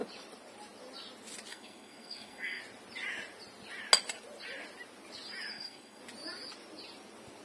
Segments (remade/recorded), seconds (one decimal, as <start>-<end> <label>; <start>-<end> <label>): 0.0-1.5 recorded; 1.5-2.6 remade; 2.6-5.5 recorded; 5.5-6.0 remade; 6.0-7.4 recorded